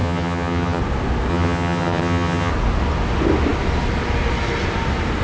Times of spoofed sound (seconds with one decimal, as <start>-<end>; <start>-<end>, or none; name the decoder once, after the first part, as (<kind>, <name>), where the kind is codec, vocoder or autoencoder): 0.0-0.8 (vocoder, HiFi-GAN); 1.3-2.5